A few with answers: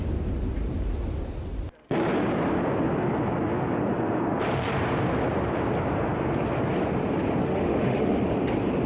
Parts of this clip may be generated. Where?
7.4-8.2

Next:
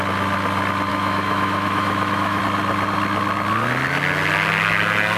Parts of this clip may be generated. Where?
0.9-2.4

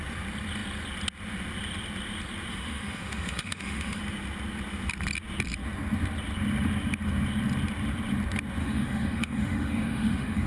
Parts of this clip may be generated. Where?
2.5-4.0; 8.6-10.5

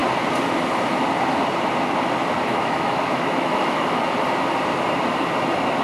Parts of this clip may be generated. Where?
2.5-4.0

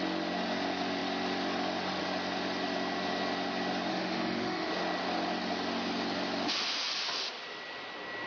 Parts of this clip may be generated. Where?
3.9-4.7

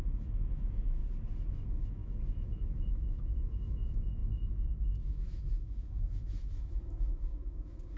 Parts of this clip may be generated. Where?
0.0-1.0; 1.5-8.0

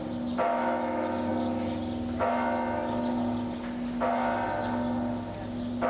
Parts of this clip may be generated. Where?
0.5-1.3

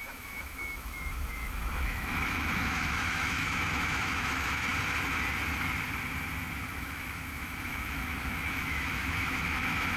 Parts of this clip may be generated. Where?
0.0-4.7; 6.6-10.0